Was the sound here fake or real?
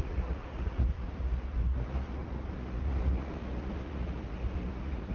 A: fake